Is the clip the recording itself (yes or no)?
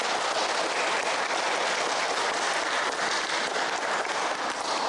yes